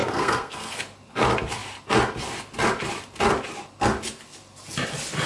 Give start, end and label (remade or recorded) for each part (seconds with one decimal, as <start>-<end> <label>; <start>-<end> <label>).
0.0-0.8 remade; 0.8-5.3 recorded